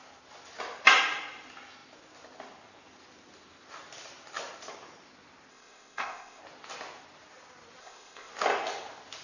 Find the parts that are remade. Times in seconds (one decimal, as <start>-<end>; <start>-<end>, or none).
5.5-6.4; 7.8-8.3